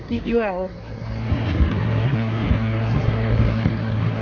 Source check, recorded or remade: remade